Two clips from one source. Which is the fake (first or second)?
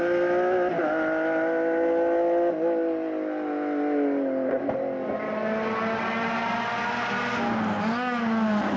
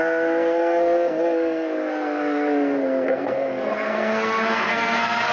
second